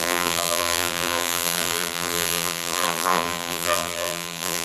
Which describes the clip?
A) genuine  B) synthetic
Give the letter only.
B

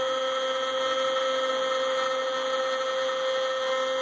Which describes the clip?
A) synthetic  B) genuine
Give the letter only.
B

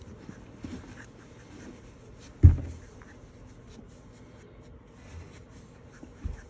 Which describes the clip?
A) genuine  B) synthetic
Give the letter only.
A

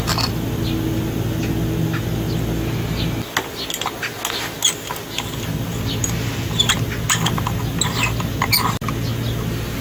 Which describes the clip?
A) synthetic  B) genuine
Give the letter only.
B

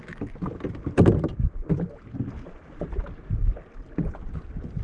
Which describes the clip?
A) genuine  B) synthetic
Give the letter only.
A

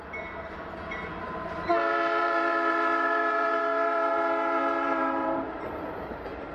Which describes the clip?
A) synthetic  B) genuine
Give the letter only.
A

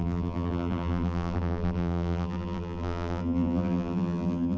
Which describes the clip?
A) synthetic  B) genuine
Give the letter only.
A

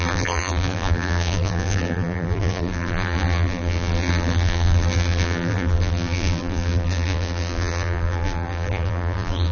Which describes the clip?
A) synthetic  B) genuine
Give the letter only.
A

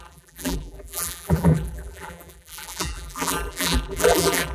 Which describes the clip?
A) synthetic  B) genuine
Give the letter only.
A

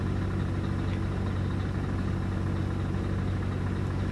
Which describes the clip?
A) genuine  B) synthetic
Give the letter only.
A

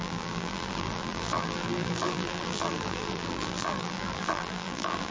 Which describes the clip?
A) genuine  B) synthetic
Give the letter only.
B